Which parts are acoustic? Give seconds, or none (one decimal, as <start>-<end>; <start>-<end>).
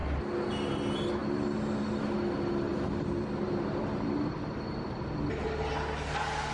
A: 0.0-2.7; 4.8-6.5